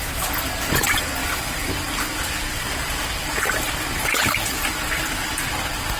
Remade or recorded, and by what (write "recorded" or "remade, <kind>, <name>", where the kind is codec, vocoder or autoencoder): recorded